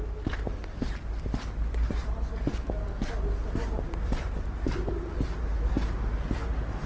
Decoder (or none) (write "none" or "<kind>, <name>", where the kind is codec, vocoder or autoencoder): none